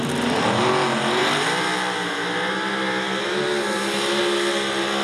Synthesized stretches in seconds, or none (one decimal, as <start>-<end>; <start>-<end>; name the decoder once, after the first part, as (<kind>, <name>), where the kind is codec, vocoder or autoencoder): none